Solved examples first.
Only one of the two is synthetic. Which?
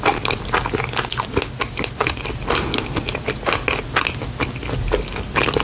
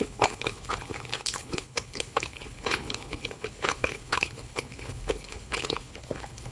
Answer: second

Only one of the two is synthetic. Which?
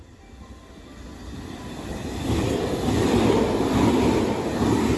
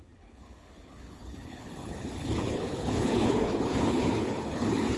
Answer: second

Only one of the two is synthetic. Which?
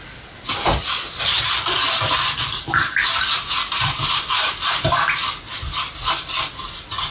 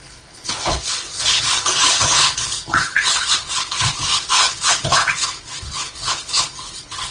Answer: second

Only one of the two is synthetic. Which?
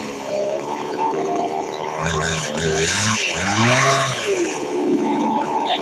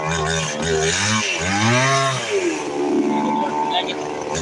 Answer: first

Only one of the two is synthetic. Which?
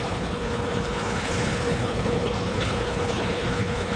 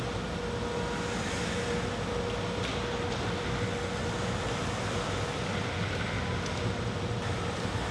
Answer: first